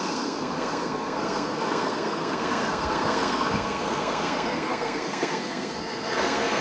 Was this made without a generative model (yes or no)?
no